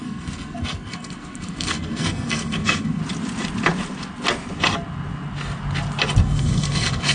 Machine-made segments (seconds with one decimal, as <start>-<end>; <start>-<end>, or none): 0.0-3.0; 6.2-7.1